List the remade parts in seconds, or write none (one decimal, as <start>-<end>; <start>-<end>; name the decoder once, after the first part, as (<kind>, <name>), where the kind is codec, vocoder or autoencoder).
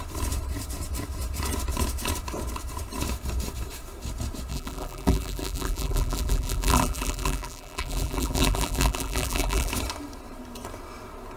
4.5-9.7 (vocoder, BigVGAN v2)